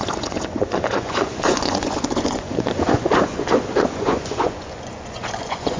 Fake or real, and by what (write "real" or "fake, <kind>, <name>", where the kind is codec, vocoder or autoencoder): fake, vocoder, Vocos